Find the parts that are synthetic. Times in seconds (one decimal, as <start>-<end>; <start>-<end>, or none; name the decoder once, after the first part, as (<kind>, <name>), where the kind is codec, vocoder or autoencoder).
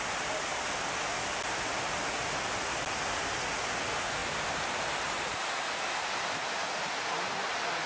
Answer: 0.5-2.8 (vocoder, BigVGAN v2)